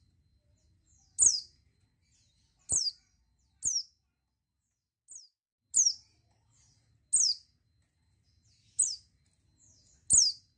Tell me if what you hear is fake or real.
real